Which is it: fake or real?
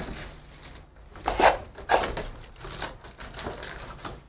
real